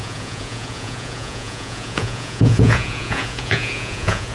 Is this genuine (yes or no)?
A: no